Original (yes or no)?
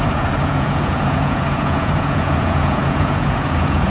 no